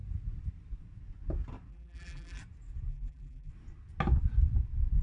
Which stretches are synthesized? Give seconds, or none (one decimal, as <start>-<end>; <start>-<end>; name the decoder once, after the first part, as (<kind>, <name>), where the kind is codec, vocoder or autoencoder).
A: 1.7-2.4 (vocoder, BigVGAN v2); 2.9-3.5